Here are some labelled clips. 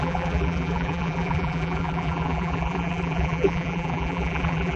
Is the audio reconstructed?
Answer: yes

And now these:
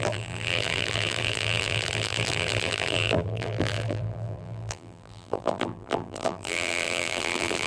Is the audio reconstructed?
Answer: yes